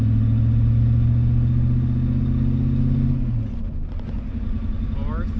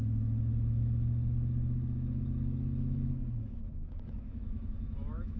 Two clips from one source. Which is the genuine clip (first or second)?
first